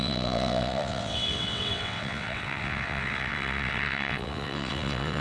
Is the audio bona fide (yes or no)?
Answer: no